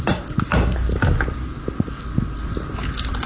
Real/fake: real